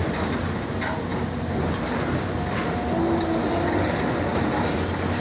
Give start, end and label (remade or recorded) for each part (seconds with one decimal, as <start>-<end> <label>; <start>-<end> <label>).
0.0-1.1 recorded; 1.1-3.2 remade; 3.2-4.3 recorded; 4.3-4.8 remade; 4.8-5.2 recorded

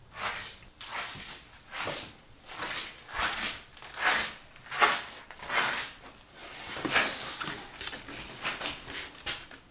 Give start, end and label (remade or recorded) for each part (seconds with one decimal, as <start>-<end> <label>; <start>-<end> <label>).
0.0-9.7 recorded

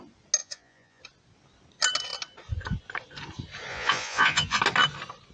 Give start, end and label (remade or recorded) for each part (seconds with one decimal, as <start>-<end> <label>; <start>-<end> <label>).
0.0-0.4 recorded; 0.4-1.0 remade; 1.0-3.7 recorded; 3.7-4.6 remade; 4.6-5.3 recorded

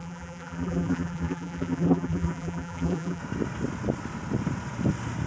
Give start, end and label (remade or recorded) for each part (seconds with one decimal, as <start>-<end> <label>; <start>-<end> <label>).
0.0-3.2 remade; 3.2-5.3 recorded